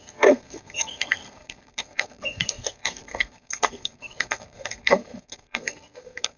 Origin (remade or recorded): remade